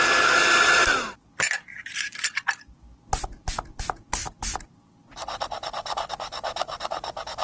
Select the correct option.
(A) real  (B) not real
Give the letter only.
A